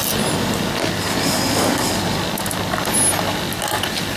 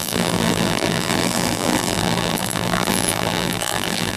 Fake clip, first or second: second